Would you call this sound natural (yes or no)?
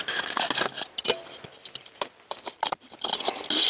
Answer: yes